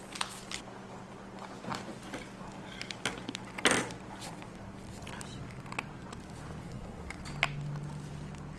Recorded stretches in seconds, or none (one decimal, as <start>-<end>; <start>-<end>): 0.0-6.6; 7.2-8.6